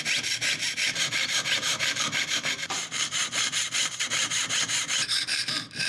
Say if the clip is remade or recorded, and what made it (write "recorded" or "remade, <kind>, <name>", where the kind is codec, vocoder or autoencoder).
remade, vocoder, BigVGAN v2